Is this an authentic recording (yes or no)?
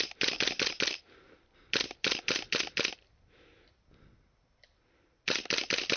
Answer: yes